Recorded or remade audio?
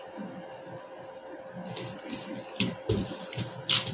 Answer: recorded